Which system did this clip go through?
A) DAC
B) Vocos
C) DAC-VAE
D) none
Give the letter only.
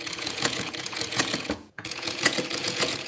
B